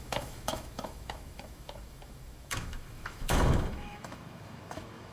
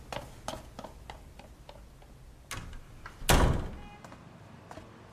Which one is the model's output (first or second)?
first